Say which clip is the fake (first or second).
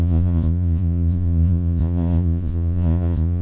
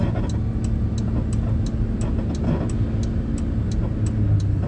first